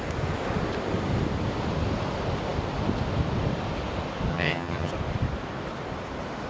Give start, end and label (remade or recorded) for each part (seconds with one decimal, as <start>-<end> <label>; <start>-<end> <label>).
0.0-4.3 recorded; 4.3-4.9 remade; 4.9-6.5 recorded